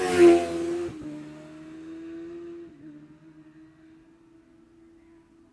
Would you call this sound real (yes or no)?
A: yes